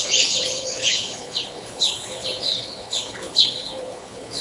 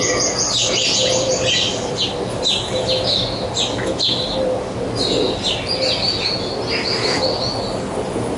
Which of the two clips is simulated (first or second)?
first